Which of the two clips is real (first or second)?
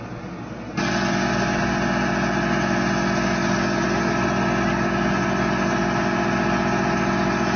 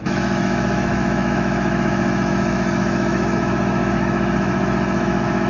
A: first